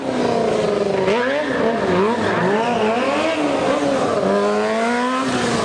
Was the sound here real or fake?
real